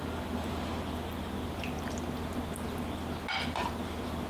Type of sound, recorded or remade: recorded